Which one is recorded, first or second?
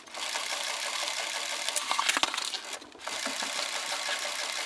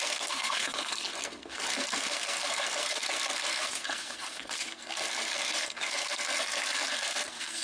first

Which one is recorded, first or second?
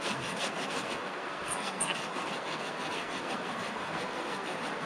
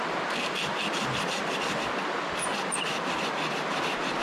second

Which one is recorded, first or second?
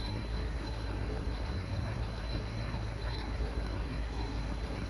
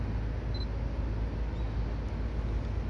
second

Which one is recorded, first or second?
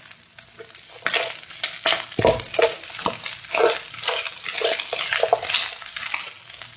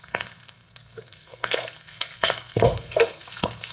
first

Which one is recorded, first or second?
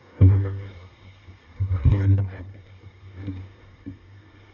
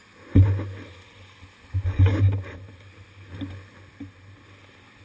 second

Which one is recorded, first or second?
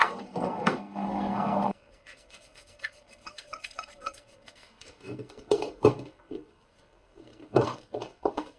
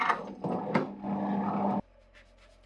second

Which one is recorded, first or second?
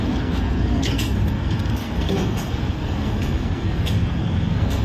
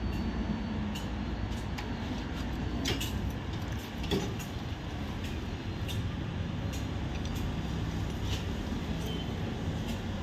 second